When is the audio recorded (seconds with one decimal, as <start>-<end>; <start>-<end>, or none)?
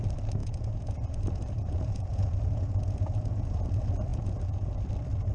0.0-0.4; 3.6-4.1; 4.8-5.3